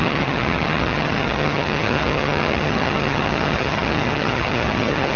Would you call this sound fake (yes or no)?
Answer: yes